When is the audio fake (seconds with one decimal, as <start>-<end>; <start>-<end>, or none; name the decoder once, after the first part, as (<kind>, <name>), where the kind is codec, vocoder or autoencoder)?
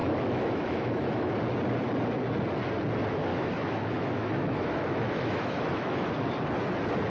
0.0-1.3 (autoencoder, DAC-VAE); 3.3-6.1